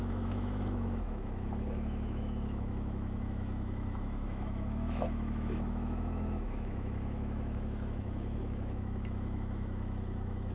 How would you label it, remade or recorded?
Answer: remade